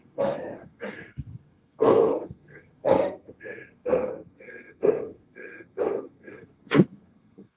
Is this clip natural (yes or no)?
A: no